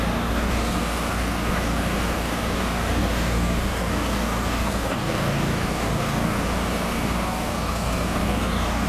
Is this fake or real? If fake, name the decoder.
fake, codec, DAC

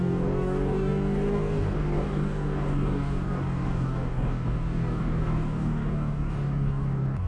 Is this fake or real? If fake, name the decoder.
fake, codec, DAC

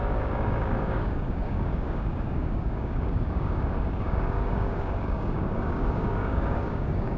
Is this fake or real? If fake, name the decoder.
fake, codec, DAC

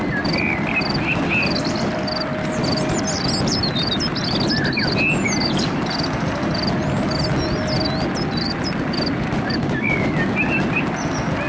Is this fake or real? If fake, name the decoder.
real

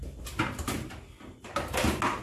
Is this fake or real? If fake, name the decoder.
real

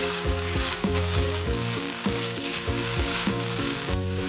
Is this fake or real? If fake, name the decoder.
fake, codec, DAC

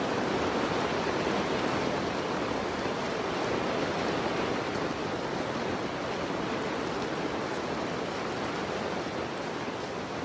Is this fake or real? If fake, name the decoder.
real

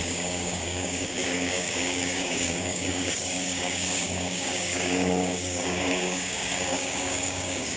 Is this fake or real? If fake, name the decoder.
fake, codec, DAC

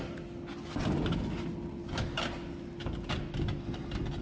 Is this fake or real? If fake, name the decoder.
real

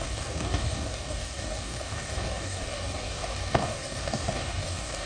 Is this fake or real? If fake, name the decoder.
fake, codec, DAC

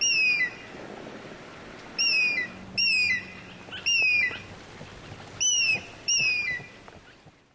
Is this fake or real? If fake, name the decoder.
real